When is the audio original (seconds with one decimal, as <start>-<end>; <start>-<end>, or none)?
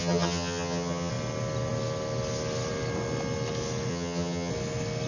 1.1-3.9; 4.5-5.1